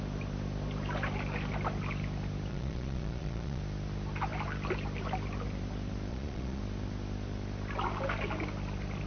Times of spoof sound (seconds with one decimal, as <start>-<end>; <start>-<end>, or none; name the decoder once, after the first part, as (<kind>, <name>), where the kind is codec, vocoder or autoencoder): 2.5-3.6 (vocoder, Vocos); 6.1-6.6